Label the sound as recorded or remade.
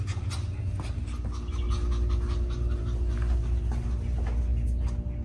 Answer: recorded